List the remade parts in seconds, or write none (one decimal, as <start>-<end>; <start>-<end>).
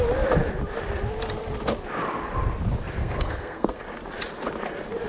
3.0-3.8